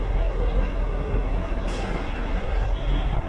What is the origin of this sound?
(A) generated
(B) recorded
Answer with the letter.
A